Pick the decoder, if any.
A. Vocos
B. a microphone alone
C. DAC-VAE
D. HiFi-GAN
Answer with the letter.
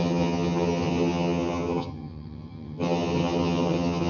D